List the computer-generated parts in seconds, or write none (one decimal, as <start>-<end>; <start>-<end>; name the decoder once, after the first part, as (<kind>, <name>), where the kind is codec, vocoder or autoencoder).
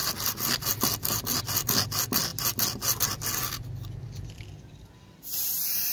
none